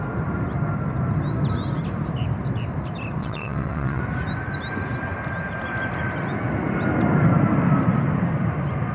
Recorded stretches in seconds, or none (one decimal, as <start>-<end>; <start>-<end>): 0.0-3.2; 4.0-8.9